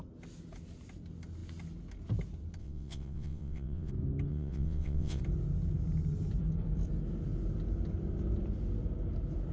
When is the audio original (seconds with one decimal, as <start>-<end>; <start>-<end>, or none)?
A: 0.0-2.6; 3.9-4.3; 5.2-9.5